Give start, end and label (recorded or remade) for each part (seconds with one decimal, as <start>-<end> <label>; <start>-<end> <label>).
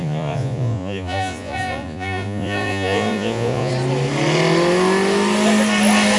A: 0.0-3.7 remade; 3.7-6.2 recorded